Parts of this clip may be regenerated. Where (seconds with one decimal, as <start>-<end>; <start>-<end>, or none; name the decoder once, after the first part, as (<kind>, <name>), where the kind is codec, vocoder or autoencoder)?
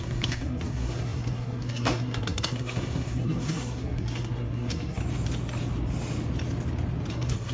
0.0-5.0 (codec, SNAC); 7.1-7.5